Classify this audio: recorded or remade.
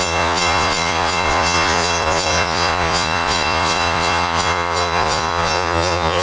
remade